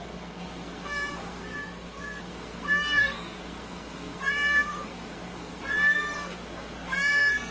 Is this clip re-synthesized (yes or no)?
yes